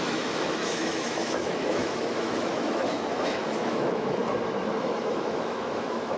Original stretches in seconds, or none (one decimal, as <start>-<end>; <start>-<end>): 4.2-4.8